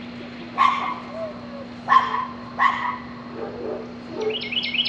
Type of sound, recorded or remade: recorded